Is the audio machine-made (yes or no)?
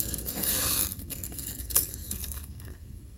yes